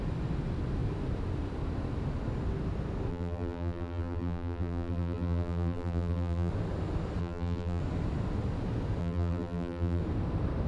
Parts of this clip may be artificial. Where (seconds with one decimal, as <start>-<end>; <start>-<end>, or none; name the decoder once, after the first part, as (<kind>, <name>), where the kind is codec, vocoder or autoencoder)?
3.1-6.5 (vocoder, BigVGAN v2); 7.2-7.8; 9.0-10.0